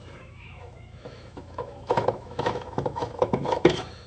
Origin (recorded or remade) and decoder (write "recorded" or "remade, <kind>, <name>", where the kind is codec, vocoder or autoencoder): remade, autoencoder, DAC-VAE